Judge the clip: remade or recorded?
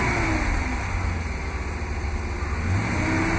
recorded